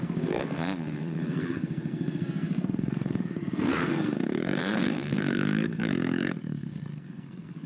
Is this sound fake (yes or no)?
yes